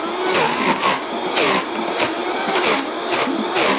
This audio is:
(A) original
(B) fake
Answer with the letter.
B